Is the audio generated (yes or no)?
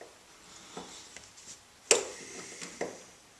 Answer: no